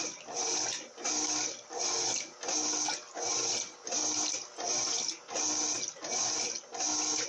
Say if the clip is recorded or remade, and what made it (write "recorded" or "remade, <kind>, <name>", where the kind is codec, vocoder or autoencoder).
recorded